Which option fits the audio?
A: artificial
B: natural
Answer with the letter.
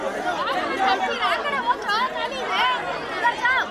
B